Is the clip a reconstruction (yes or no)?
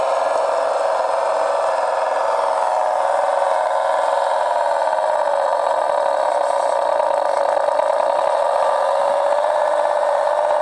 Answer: no